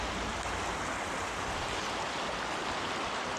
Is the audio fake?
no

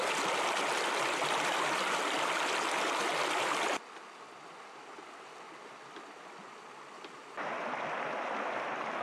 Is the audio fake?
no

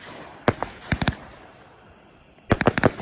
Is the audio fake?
no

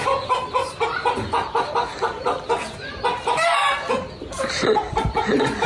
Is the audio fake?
no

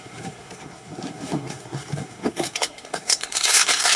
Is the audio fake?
yes